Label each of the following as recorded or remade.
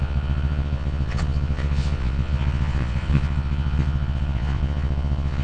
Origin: remade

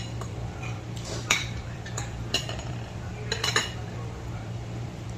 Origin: remade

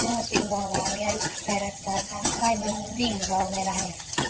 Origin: remade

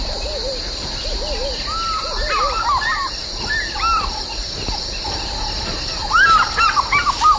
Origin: recorded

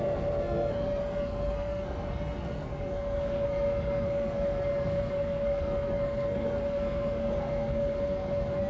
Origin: remade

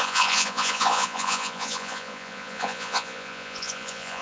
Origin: remade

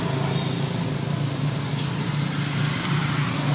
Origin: recorded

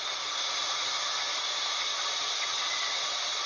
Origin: recorded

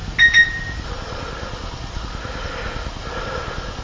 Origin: recorded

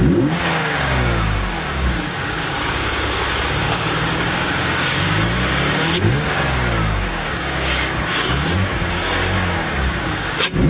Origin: remade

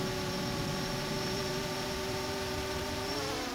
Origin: remade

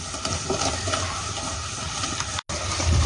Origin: recorded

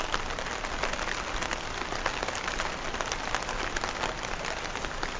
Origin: recorded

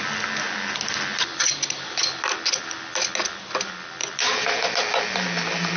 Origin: recorded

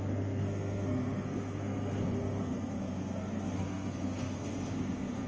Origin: remade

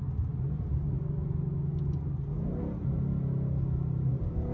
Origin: recorded